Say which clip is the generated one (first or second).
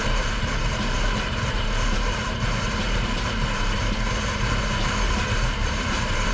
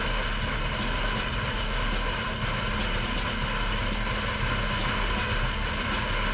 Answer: first